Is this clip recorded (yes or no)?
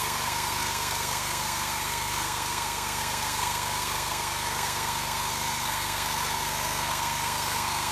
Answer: no